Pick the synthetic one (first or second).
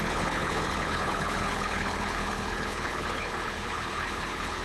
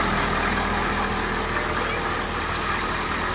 first